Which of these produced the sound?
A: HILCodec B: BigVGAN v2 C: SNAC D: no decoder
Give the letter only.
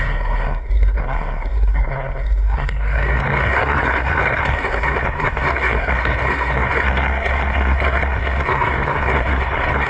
C